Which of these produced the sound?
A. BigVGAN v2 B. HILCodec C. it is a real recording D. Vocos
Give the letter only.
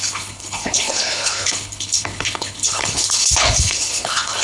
B